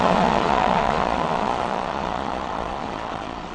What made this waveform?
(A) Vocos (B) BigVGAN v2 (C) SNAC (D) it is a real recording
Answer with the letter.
A